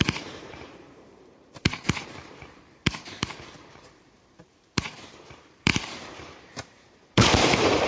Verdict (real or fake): fake